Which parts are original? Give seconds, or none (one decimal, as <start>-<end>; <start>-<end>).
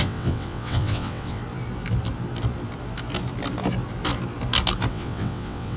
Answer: 1.4-4.9